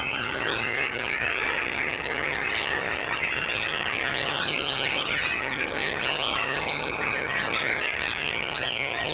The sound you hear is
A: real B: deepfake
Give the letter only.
B